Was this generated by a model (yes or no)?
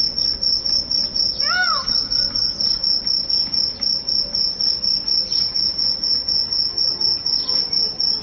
no